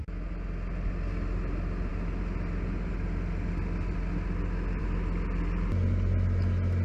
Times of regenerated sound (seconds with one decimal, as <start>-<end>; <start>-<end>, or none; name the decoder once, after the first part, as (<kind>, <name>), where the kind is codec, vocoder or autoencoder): none